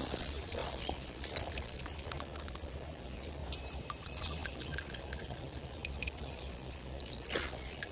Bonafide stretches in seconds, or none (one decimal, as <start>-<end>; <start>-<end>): 3.4-4.0